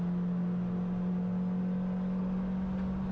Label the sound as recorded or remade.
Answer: recorded